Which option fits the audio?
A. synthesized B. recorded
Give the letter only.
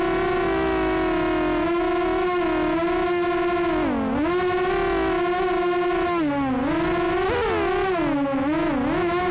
B